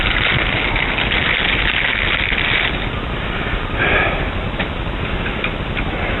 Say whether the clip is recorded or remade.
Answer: recorded